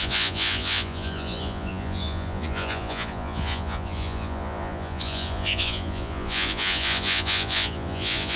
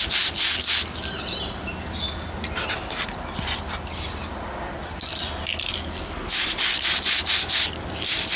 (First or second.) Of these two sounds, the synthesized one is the first